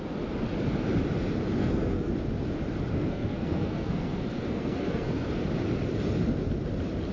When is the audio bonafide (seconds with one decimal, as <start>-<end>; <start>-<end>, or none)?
0.0-1.6; 2.1-2.9; 5.4-7.1